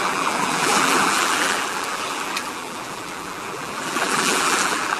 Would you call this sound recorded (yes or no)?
no